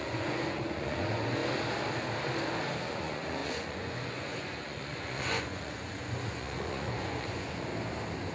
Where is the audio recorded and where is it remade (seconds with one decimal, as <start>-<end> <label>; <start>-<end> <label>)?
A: 0.0-1.4 remade; 1.4-2.9 recorded; 2.9-7.7 remade; 7.7-8.3 recorded